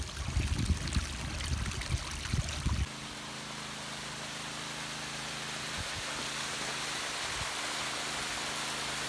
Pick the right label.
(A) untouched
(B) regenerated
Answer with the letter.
A